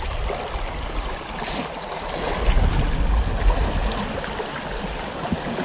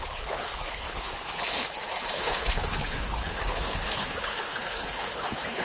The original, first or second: first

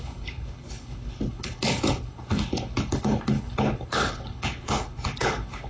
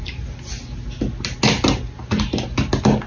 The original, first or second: second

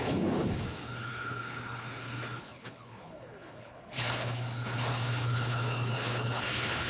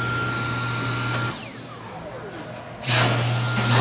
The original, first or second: second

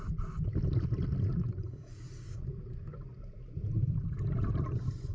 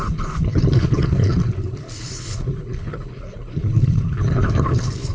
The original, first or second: first